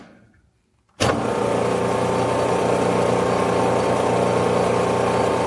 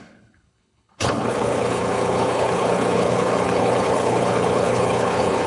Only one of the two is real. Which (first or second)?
first